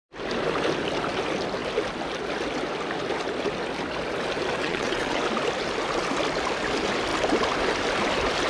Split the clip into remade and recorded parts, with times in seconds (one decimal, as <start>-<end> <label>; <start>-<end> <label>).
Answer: 0.0-4.6 recorded; 4.6-5.2 remade; 5.2-8.5 recorded